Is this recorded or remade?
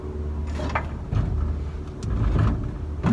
recorded